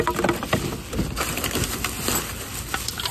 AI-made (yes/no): no